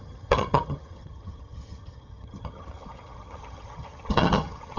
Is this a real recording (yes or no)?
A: no